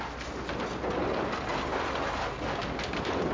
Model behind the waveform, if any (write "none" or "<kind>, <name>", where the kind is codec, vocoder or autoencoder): none